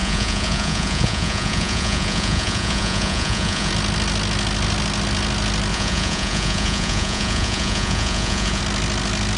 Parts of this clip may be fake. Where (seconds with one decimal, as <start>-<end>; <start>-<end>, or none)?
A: 0.0-3.7; 5.7-8.6